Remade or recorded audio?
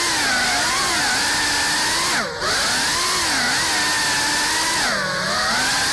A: recorded